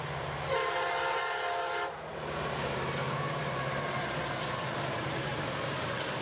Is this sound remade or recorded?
remade